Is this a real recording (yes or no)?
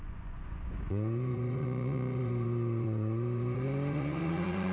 no